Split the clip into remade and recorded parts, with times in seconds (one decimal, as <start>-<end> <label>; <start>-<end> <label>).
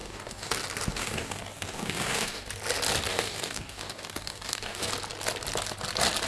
0.0-0.5 remade; 0.5-0.9 recorded; 0.9-2.5 remade; 2.5-3.1 recorded; 3.1-4.9 remade; 4.9-6.3 recorded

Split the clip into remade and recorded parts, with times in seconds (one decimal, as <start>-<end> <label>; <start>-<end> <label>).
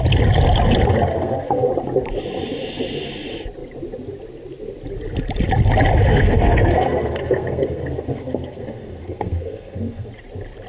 0.0-1.1 recorded; 1.1-1.7 remade; 1.7-6.1 recorded; 6.1-10.1 remade; 10.1-10.7 recorded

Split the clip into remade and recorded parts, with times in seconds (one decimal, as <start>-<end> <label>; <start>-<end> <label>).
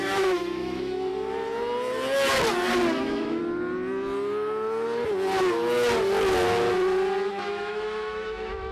0.0-1.1 remade; 1.1-3.0 recorded; 3.0-3.4 remade; 3.4-7.3 recorded; 7.3-8.7 remade